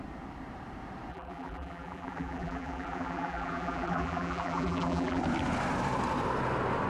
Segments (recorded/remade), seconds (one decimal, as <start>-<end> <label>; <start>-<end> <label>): 0.0-1.1 recorded; 1.1-5.2 remade; 5.2-6.9 recorded